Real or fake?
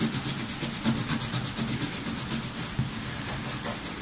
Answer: real